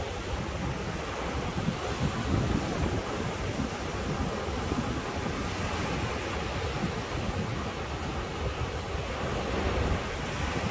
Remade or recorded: recorded